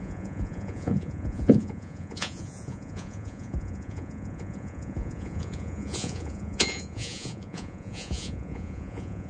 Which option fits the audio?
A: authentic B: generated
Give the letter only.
B